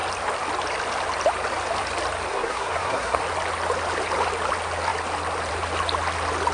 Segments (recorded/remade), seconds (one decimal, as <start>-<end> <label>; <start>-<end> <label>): 0.0-2.3 recorded; 2.3-3.2 remade; 3.2-6.5 recorded

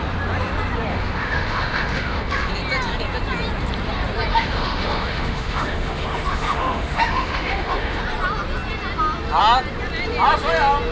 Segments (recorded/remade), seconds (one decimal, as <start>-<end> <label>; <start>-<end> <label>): 0.0-0.9 recorded; 0.9-2.5 remade; 2.5-4.3 recorded; 4.3-8.0 remade; 8.0-10.9 recorded